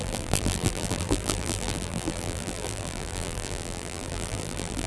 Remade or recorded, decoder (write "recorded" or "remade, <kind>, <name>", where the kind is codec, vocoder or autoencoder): remade, vocoder, BigVGAN v2